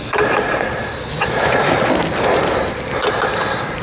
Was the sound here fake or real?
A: real